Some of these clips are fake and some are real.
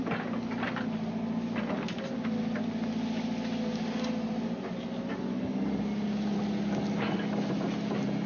real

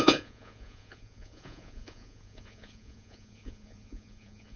fake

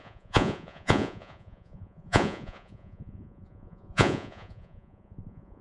fake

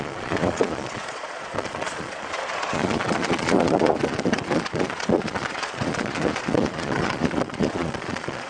fake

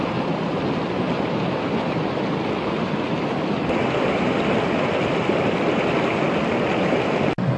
real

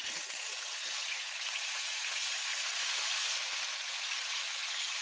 fake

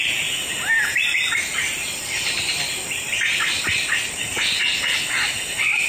real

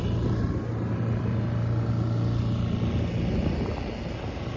real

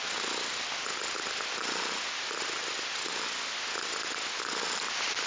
real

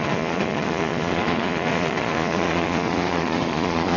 fake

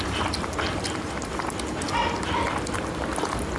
real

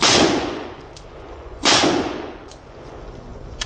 fake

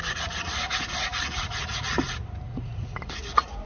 fake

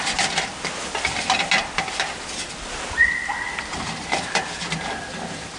real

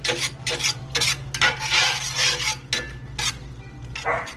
real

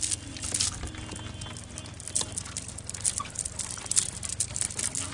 real